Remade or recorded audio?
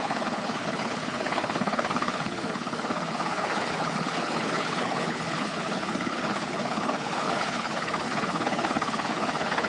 remade